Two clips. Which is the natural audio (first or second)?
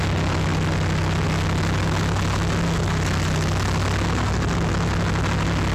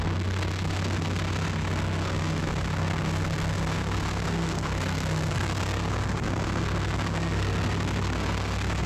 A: first